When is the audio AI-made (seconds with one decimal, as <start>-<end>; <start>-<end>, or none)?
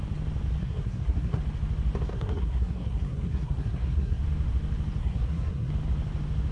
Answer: 0.6-1.4; 2.1-4.2; 5.0-5.7